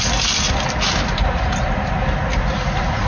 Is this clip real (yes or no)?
yes